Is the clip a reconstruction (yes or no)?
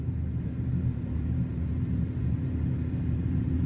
yes